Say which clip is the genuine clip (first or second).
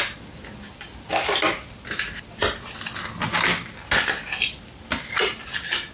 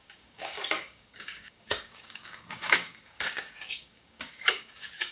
first